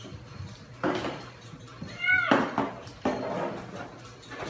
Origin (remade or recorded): recorded